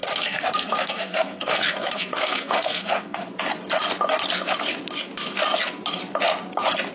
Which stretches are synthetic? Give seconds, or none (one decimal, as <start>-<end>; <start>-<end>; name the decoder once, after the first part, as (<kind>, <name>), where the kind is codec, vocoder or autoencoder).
0.0-3.3 (codec, SNAC)